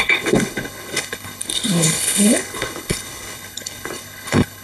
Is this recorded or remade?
remade